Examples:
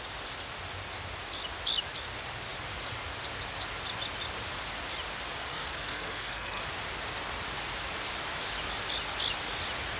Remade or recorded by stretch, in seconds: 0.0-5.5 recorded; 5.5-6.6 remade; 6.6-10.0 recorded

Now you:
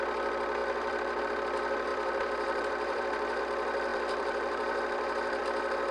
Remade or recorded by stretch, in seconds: 0.0-0.6 recorded; 0.6-1.2 remade; 1.2-1.9 recorded; 1.9-3.4 remade; 3.4-3.9 recorded; 3.9-5.4 remade; 5.4-5.9 recorded